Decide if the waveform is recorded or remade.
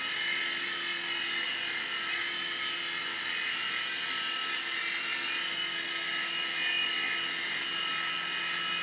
recorded